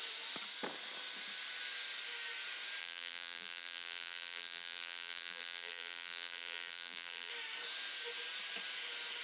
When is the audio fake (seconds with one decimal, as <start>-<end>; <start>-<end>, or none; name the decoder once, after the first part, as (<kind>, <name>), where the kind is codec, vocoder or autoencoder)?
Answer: 2.8-7.3 (vocoder, BigVGAN v2)